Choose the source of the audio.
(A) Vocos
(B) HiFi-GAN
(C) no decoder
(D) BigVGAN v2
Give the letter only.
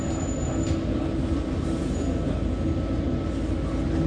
C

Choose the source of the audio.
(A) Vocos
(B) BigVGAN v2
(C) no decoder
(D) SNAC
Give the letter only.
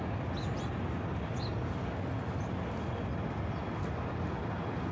C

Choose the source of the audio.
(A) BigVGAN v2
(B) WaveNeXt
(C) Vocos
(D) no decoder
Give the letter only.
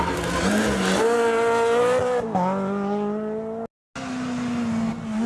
D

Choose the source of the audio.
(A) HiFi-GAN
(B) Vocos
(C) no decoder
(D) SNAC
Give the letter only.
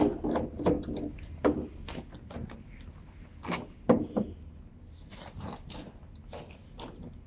C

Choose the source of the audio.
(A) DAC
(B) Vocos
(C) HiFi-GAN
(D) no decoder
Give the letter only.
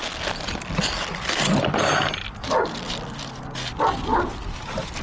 D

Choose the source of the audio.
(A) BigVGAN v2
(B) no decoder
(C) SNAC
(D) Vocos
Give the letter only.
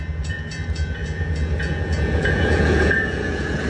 D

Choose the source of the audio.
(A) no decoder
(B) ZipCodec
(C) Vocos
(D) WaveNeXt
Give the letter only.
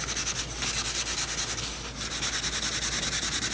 A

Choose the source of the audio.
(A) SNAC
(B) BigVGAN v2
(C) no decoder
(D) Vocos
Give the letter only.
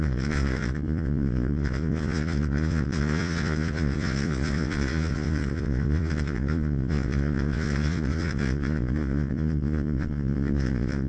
D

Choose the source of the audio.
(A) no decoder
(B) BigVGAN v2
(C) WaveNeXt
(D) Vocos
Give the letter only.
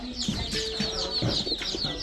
A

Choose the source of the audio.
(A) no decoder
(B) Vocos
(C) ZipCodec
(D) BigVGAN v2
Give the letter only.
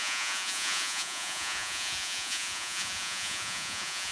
B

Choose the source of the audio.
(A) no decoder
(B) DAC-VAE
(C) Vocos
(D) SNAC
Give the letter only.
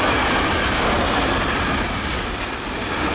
A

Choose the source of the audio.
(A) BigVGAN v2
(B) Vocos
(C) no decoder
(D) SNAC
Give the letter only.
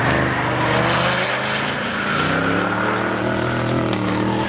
C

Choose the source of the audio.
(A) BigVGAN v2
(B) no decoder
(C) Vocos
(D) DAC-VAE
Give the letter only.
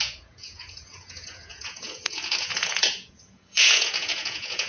C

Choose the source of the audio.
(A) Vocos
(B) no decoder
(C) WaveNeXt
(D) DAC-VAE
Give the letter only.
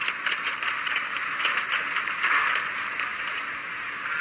B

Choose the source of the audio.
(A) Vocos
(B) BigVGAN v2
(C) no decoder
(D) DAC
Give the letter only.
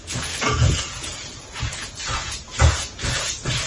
A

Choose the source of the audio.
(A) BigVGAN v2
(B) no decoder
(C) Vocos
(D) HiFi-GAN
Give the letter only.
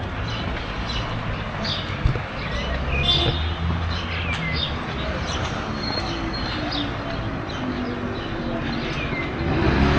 B